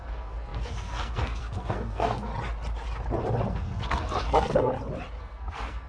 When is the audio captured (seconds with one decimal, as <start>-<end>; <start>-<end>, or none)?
2.3-3.5; 4.7-5.2